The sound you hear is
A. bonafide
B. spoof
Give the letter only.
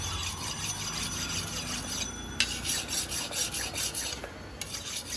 A